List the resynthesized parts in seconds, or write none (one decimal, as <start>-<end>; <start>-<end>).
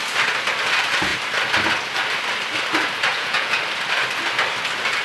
3.1-3.6